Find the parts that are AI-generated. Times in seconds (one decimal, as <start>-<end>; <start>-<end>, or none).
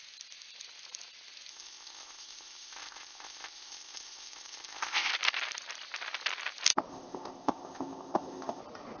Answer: 1.5-5.1; 6.9-8.6